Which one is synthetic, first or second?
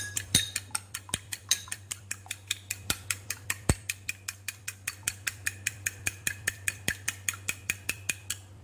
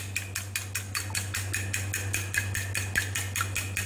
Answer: first